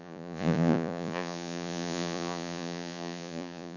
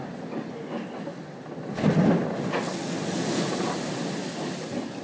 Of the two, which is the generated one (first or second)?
first